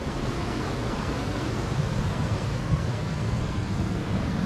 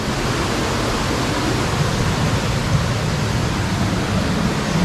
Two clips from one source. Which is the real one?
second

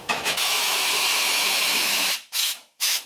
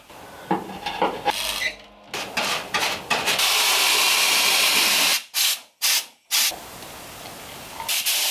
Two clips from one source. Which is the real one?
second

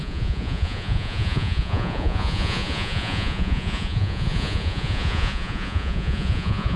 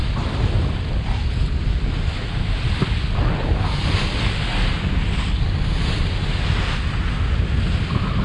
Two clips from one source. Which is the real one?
second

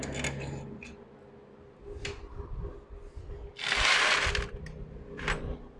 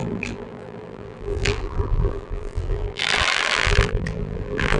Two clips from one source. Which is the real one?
first